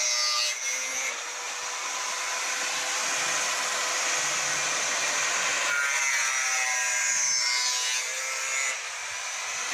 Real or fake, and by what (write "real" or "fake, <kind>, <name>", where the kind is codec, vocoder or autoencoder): real